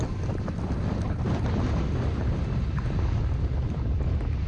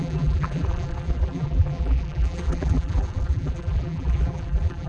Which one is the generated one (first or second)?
second